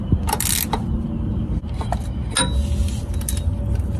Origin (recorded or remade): recorded